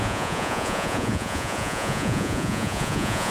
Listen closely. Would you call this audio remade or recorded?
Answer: remade